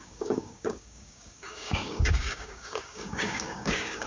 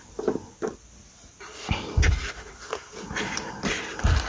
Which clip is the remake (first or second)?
first